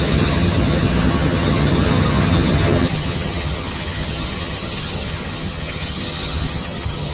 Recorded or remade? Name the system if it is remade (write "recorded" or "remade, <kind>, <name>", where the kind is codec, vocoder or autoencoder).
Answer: remade, vocoder, HiFi-GAN